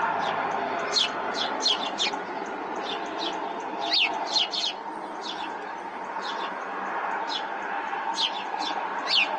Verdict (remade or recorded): recorded